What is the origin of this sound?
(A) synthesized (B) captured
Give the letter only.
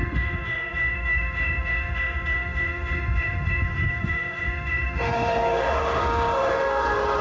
A